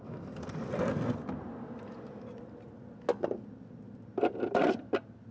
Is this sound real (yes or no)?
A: yes